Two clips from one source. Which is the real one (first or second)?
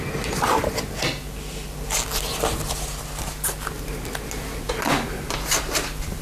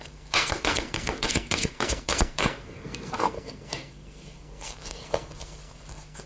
first